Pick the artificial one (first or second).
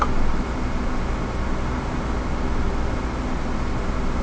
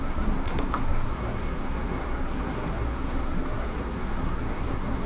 second